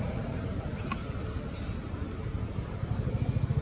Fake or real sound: real